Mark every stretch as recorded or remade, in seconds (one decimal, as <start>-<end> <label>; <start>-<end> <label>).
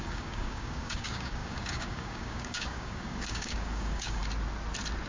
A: 0.0-4.2 remade; 4.2-5.1 recorded